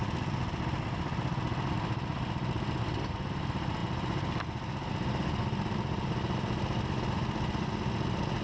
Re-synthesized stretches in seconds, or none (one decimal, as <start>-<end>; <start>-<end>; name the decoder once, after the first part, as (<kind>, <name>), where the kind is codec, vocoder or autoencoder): none

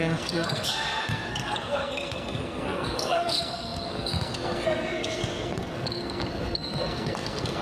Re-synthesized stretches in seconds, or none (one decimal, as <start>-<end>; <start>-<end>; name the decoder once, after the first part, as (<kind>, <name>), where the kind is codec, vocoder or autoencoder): 0.0-7.6 (codec, SNAC)

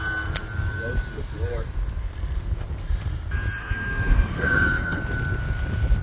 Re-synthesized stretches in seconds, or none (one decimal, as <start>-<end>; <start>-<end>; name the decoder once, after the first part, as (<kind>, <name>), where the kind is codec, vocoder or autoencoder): 3.6-5.0 (codec, SNAC)

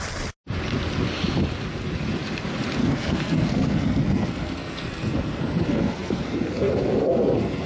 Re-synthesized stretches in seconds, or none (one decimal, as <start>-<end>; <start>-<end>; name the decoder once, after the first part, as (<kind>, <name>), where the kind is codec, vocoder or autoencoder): 2.8-7.7 (codec, SNAC)

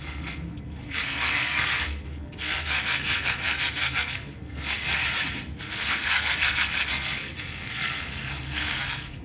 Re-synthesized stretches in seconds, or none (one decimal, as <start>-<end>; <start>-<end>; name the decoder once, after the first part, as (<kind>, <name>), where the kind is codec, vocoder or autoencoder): 0.0-5.0 (codec, SNAC); 5.6-9.2

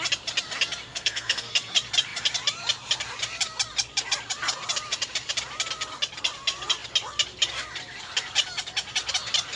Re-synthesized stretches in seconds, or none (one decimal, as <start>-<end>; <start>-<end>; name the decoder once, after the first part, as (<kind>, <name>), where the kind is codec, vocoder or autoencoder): 0.9-1.5 (codec, SNAC)

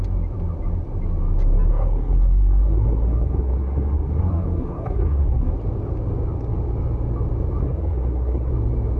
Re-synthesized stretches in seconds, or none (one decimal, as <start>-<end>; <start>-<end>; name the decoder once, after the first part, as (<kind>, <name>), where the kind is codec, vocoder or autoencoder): 1.7-5.5 (codec, SNAC); 7.6-8.5

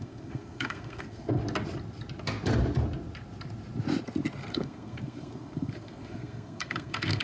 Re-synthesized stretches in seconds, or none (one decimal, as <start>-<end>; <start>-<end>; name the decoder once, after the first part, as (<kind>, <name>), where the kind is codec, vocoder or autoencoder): 0.0-1.4 (codec, SNAC); 4.5-7.2